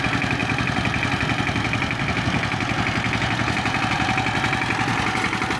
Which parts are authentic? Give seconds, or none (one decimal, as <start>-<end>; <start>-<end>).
0.0-5.6